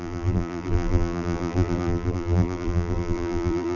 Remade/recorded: remade